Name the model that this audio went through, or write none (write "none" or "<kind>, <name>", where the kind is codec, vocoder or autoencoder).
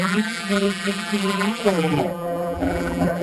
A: vocoder, BigVGAN v2